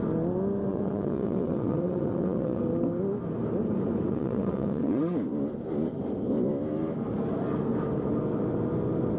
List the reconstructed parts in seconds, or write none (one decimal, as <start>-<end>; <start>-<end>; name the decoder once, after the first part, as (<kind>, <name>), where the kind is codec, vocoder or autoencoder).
0.7-2.6 (vocoder, WaveNeXt); 4.1-5.0